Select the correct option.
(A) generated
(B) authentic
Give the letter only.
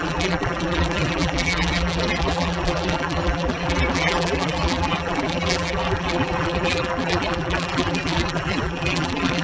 A